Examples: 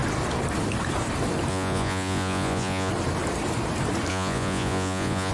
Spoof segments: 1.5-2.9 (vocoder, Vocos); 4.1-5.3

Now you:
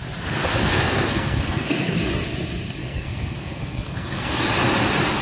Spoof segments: 0.6-2.1 (codec, SNAC); 2.8-4.4

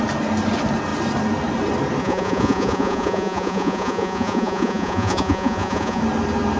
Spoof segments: 2.0-6.0 (vocoder, Vocos)

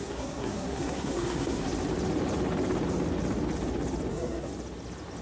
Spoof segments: 0.0-1.7 (codec, SNAC); 4.1-4.5

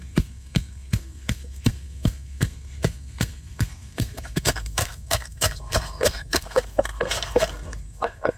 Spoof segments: 0.0-8.4 (codec, SNAC)